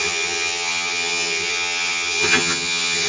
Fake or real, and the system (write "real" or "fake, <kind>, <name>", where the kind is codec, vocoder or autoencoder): fake, vocoder, HiFi-GAN